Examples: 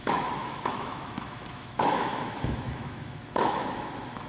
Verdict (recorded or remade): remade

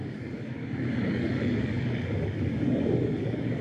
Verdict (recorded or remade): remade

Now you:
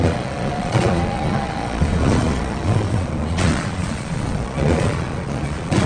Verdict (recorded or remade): remade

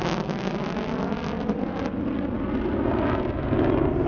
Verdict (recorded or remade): recorded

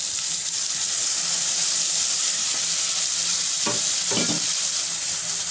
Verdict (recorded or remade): remade